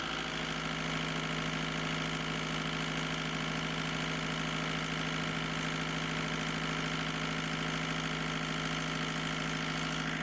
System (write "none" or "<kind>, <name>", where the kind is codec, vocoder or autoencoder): none